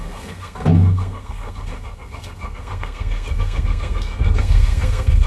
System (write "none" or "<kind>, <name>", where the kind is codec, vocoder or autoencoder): codec, SNAC